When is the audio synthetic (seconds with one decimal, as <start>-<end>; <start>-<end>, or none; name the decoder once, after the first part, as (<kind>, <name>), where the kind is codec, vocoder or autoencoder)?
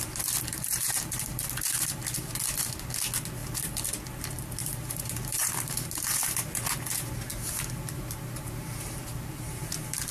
0.5-2.0 (vocoder, BigVGAN v2); 4.6-6.2; 7.3-10.1